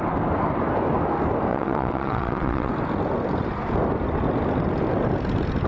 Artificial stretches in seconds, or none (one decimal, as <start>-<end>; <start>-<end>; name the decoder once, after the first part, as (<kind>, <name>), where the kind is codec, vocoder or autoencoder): 1.5-2.7 (vocoder, WaveNeXt)